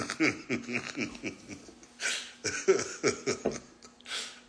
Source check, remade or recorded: recorded